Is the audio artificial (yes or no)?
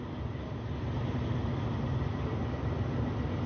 no